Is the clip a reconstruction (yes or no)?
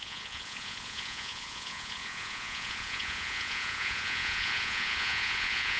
yes